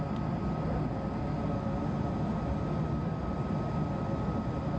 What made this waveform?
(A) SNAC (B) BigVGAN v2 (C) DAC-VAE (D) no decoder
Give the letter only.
D